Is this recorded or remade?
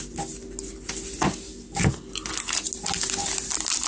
recorded